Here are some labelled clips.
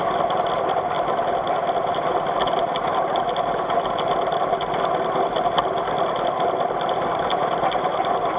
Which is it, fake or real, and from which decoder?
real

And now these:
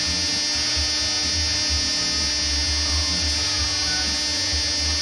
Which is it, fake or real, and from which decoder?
real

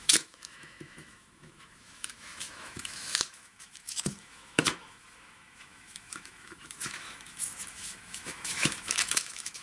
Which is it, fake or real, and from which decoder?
fake, autoencoder, DAC-VAE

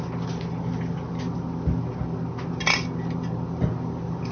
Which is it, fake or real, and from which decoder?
real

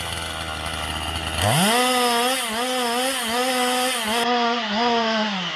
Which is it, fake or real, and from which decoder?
real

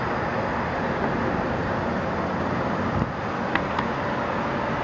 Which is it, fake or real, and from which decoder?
real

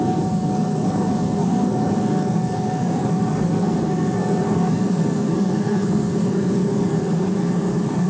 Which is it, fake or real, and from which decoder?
fake, codec, SNAC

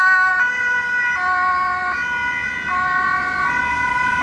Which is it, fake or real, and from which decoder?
real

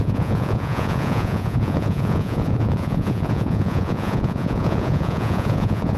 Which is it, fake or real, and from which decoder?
fake, vocoder, Vocos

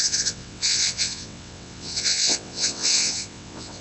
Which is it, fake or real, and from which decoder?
fake, vocoder, WaveNeXt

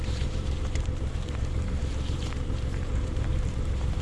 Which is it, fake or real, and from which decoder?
fake, vocoder, BigVGAN v2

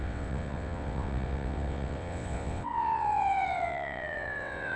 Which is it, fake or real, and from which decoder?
fake, vocoder, WaveNeXt